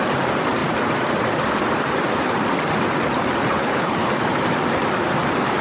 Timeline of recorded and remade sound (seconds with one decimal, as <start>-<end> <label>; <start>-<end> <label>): 0.0-3.6 recorded; 3.6-4.1 remade; 4.1-5.6 recorded